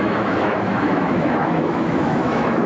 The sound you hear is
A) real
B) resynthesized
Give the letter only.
B